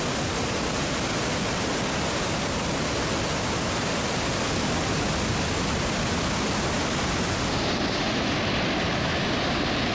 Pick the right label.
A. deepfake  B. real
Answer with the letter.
B